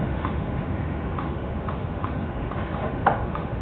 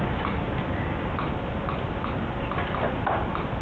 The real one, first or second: second